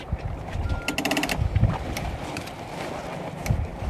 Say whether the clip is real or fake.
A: real